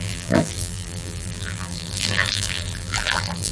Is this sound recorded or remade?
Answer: remade